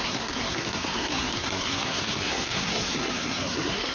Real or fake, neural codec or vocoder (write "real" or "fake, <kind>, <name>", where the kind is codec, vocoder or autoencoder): fake, codec, SNAC